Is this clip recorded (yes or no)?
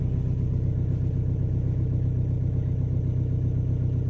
yes